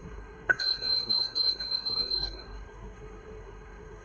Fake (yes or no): yes